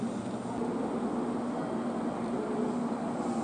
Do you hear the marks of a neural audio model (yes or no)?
no